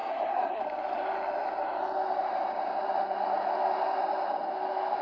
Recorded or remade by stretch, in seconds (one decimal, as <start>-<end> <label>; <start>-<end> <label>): 0.0-0.6 remade; 0.6-5.0 recorded